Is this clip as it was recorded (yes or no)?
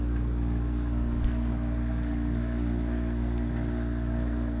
no